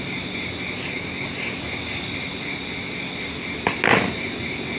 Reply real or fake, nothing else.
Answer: real